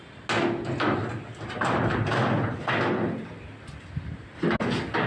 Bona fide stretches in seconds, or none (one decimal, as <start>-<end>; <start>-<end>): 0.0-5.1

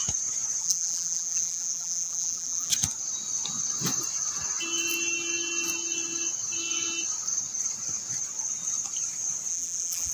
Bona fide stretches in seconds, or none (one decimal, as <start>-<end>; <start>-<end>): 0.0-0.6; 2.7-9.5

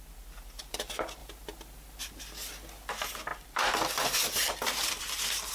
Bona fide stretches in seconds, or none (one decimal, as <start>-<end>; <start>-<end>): 0.0-3.3

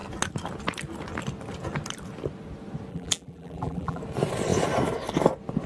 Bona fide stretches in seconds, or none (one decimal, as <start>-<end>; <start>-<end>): 0.0-2.9; 4.0-5.7

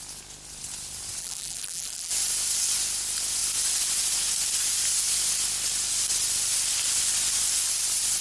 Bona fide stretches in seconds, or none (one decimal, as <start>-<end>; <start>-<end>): 0.0-1.2; 2.1-8.2

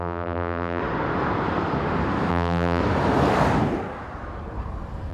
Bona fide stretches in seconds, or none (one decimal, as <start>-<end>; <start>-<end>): 0.8-2.3; 2.8-5.1

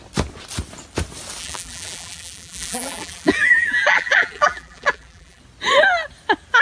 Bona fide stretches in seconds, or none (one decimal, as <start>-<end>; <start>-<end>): 0.0-1.4; 5.4-6.6